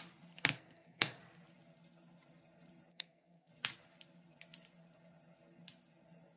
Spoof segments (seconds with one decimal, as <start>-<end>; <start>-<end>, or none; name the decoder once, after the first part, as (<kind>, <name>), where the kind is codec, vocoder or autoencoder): 0.5-1.2 (codec, SNAC); 2.9-3.5